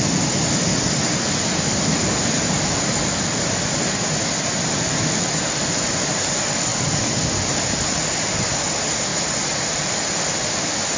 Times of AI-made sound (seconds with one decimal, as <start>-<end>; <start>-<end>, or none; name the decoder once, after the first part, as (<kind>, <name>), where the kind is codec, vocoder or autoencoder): 9.1-9.9 (vocoder, BigVGAN v2)